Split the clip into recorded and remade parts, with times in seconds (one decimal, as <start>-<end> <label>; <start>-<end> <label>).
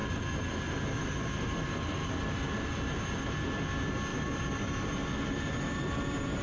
0.0-3.3 remade; 3.3-4.1 recorded; 4.1-6.4 remade